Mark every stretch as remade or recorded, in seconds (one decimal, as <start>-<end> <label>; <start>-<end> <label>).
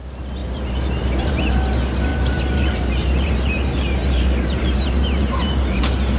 0.0-0.4 recorded; 0.4-1.5 remade; 1.5-2.1 recorded; 2.1-5.8 remade; 5.8-6.2 recorded